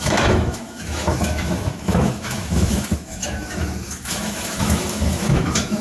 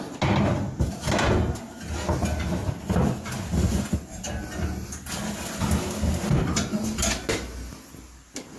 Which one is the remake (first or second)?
first